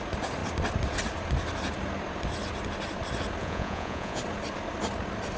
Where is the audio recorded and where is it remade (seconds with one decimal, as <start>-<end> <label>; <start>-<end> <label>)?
0.0-3.4 recorded; 3.4-4.2 remade; 4.2-5.4 recorded